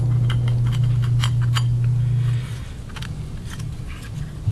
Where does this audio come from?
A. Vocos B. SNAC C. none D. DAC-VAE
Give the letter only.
C